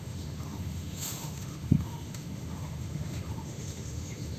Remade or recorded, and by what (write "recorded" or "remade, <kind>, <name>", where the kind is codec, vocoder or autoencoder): remade, autoencoder, DAC-VAE